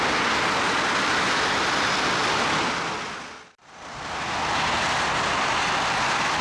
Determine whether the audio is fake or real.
real